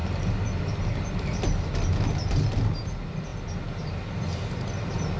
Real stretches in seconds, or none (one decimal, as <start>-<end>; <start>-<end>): 0.0-5.2